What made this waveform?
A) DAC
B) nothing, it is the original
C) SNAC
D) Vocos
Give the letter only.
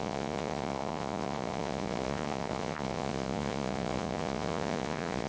D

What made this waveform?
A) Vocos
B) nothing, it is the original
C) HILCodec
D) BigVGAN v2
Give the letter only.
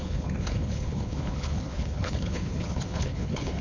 C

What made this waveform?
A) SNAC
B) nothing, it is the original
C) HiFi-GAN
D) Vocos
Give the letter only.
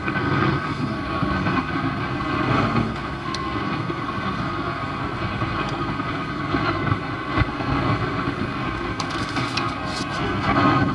A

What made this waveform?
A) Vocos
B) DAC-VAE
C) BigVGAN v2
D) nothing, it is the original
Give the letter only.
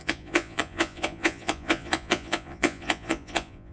A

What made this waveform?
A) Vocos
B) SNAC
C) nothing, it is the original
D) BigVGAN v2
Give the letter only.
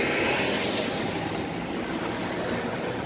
C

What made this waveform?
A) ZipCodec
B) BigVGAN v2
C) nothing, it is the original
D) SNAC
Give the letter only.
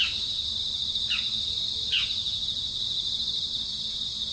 C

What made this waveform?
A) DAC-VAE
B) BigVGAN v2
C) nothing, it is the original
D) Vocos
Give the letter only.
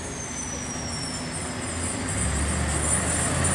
C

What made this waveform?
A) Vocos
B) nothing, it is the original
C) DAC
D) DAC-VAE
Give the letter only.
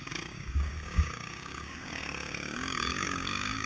C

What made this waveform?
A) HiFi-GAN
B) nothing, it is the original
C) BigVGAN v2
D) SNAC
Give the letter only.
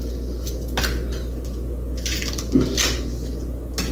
B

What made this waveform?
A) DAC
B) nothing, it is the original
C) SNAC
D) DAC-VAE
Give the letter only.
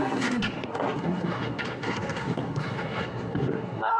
C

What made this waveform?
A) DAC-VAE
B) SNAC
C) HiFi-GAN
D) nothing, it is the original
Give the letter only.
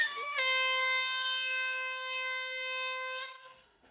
A